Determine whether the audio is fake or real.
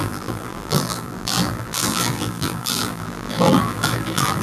fake